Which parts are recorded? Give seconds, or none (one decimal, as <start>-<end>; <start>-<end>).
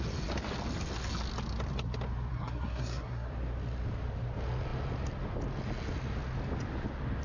0.0-2.3; 3.3-7.2